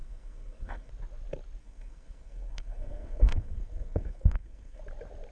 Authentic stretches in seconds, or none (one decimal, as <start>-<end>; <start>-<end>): 0.9-1.6; 4.8-5.3